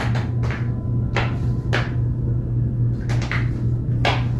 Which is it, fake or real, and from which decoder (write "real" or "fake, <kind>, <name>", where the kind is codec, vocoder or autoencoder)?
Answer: real